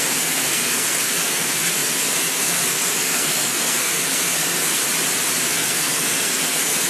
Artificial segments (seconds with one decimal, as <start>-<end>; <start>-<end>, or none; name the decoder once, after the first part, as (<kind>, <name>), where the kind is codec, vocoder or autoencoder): 0.0-4.8 (codec, SNAC); 5.5-6.9